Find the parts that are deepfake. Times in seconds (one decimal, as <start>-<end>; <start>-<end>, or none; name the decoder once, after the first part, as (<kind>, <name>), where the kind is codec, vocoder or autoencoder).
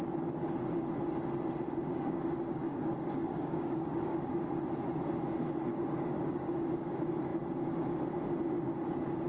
1.9-4.4 (codec, DAC); 5.7-6.6